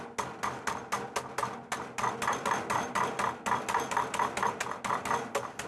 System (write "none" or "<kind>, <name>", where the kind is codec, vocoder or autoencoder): none